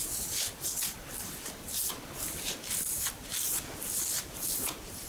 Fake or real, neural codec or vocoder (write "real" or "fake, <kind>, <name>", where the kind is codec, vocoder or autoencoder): fake, vocoder, BigVGAN v2